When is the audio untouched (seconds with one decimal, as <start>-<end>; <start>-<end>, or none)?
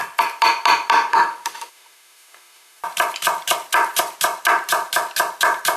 0.0-1.1; 2.8-5.8